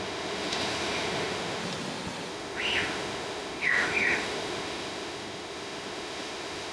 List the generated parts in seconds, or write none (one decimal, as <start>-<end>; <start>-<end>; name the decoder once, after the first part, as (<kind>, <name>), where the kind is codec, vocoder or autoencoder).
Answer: 0.0-1.6 (autoencoder, DAC-VAE); 2.3-6.7